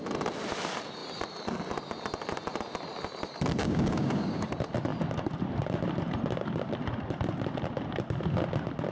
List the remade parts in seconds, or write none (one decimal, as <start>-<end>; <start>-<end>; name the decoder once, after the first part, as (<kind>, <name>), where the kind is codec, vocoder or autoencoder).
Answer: 3.6-4.5 (codec, DAC)